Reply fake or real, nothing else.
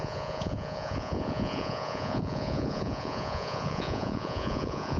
fake